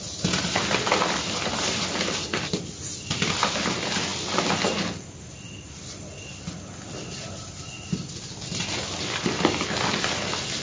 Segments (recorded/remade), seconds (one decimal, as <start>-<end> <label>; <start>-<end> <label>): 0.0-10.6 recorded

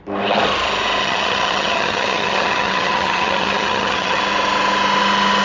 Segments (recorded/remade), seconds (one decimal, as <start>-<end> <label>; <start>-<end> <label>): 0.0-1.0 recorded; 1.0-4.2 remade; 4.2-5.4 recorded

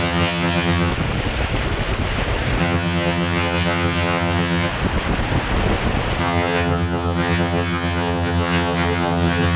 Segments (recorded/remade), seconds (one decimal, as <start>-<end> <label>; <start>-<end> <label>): 0.0-0.9 remade; 0.9-2.6 recorded; 2.6-4.7 remade; 4.7-6.2 recorded; 6.2-9.6 remade

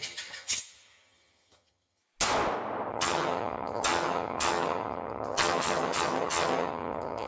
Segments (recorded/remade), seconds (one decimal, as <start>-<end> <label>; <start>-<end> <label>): 0.0-2.0 remade; 2.0-2.9 recorded; 2.9-7.3 remade